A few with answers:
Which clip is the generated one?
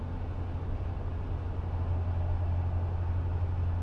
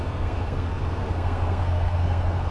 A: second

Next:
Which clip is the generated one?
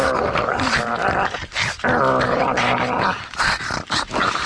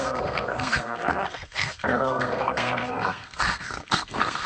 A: second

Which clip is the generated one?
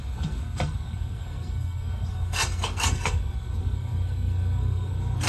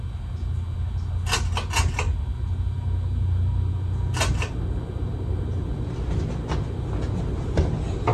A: first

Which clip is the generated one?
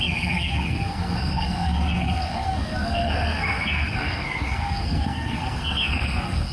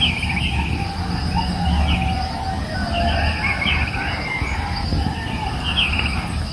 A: first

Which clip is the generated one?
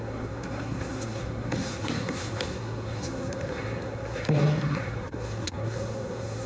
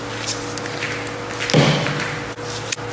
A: first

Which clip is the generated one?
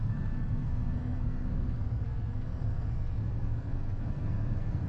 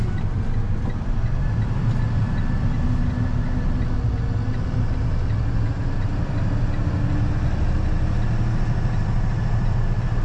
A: first